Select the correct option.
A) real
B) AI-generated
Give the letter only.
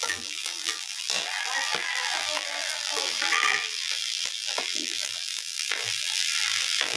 B